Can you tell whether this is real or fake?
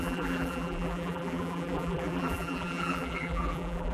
fake